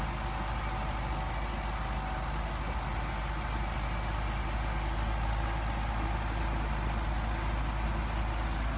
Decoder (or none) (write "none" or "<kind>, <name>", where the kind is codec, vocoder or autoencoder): none